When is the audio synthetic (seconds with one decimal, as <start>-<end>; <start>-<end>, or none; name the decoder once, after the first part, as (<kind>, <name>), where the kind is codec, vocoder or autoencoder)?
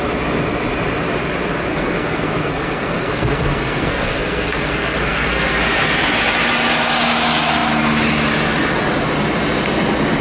1.7-5.6 (codec, SNAC)